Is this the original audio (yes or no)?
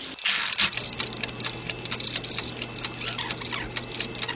yes